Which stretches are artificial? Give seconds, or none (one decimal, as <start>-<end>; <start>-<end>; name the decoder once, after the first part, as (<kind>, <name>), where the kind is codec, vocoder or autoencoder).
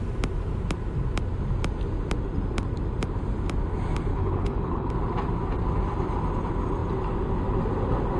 4.1-4.9 (codec, HILCodec)